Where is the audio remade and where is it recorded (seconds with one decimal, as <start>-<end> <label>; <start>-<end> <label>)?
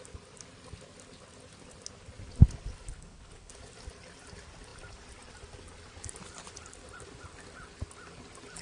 0.0-2.9 recorded; 2.9-3.5 remade; 3.5-8.6 recorded